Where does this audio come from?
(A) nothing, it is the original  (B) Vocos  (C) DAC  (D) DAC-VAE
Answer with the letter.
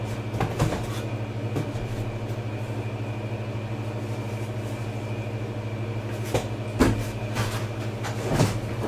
A